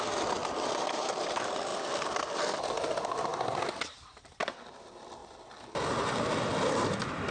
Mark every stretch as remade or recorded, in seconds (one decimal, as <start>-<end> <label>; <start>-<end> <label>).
0.0-1.7 remade; 1.7-2.2 recorded; 2.2-3.3 remade; 3.3-4.6 recorded; 4.6-5.2 remade; 5.2-6.4 recorded; 6.4-7.3 remade